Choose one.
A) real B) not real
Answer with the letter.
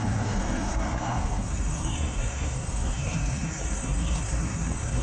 B